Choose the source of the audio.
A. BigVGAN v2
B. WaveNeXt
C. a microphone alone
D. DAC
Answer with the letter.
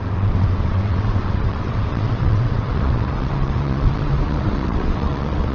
B